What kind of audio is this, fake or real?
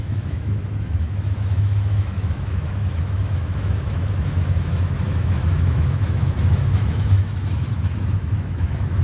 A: fake